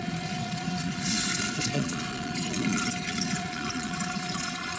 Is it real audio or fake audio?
fake